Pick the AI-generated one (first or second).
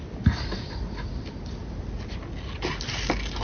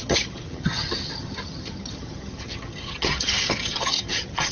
second